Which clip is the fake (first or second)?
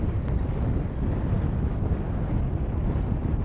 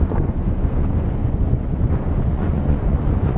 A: second